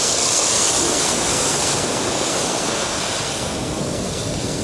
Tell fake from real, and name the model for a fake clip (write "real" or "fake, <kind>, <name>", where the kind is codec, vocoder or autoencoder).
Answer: fake, codec, SNAC